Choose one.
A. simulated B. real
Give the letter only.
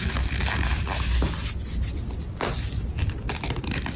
B